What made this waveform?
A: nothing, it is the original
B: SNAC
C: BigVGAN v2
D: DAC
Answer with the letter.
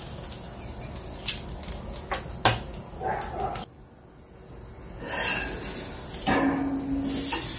A